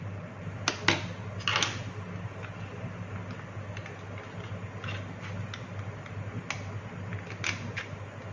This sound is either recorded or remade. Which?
recorded